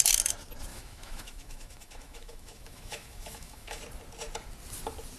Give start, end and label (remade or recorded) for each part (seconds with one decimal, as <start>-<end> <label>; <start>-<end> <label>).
0.0-0.7 recorded; 0.7-3.8 remade; 3.8-5.2 recorded